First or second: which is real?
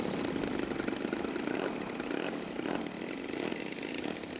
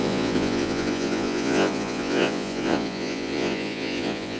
first